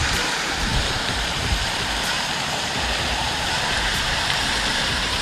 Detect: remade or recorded remade